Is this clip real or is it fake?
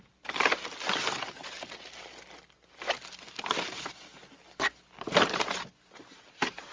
real